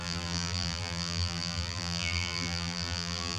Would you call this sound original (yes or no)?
no